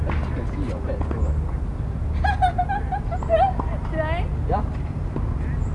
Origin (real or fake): real